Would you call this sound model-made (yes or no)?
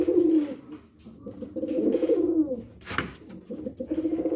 no